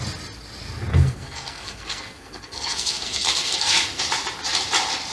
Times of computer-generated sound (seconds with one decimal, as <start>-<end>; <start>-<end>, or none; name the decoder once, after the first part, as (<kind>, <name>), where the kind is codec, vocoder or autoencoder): 0.9-4.0 (codec, SNAC)